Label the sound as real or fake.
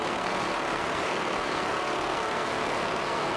fake